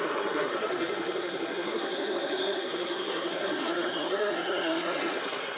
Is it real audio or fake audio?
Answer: fake